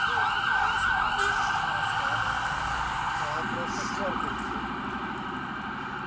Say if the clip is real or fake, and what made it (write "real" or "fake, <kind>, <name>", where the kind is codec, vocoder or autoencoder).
real